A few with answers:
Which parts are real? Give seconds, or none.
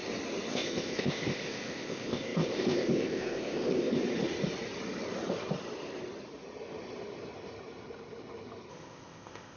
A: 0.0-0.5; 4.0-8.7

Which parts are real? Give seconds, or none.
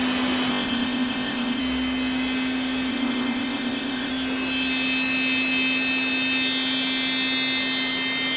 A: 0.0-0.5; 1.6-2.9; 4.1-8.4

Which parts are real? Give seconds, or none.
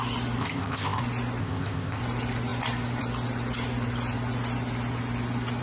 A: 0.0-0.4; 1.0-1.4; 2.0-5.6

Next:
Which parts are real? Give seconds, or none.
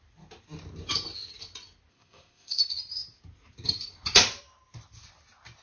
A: 0.0-1.9; 2.6-5.6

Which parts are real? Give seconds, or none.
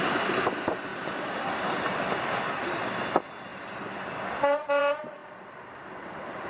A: 0.0-6.5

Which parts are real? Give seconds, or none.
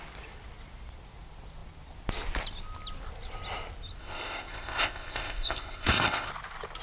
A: 0.0-4.0; 6.3-6.8